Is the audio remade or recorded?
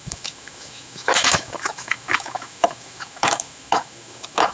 remade